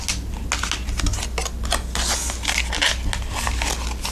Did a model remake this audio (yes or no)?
no